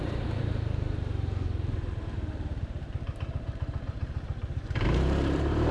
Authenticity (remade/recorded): remade